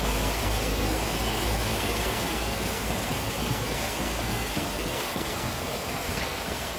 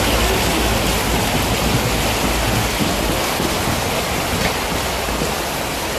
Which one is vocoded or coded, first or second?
first